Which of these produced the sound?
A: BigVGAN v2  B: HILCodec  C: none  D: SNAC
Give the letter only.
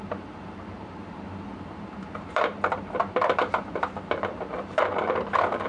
A